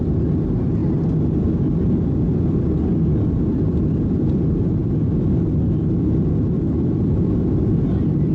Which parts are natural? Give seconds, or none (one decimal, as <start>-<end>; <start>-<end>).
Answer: 0.0-0.8; 2.6-4.8; 5.5-8.3

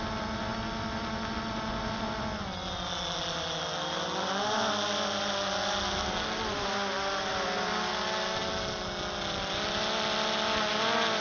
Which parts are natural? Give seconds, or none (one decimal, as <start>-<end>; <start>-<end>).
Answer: 0.0-11.2

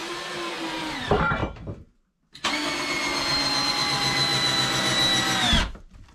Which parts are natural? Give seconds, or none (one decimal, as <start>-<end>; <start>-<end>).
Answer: 1.4-3.7; 4.3-5.6